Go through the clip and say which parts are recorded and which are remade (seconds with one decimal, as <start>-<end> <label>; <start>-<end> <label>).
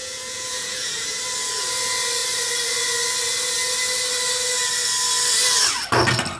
0.0-1.2 remade; 1.2-6.4 recorded